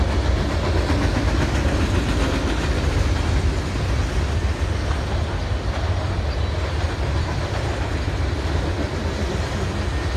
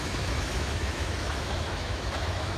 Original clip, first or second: first